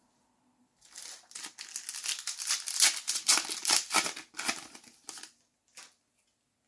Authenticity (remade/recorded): recorded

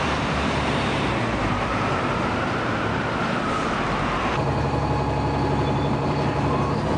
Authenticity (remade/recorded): remade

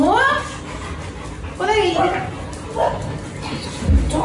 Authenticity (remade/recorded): recorded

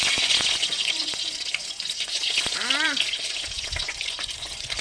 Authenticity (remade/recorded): remade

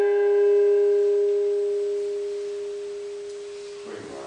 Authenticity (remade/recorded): recorded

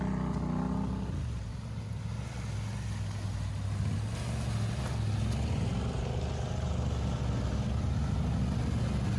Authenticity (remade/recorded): recorded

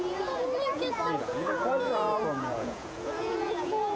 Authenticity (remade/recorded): remade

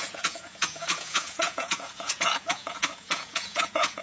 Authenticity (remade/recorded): remade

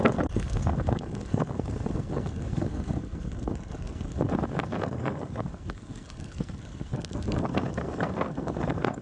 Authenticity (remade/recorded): remade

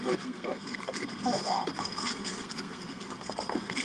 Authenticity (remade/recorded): remade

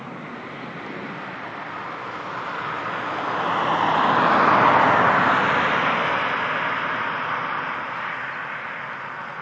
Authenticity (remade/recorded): recorded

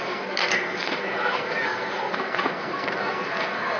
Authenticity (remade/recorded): remade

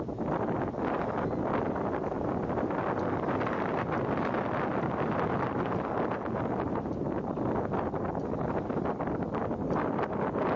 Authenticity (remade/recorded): recorded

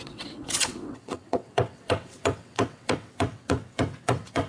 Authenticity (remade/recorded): remade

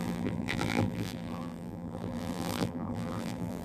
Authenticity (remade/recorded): remade